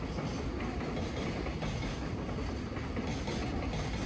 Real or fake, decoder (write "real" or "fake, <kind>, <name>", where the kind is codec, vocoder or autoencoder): real